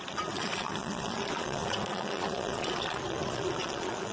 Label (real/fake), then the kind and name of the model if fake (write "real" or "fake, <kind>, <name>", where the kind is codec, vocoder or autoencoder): fake, vocoder, Vocos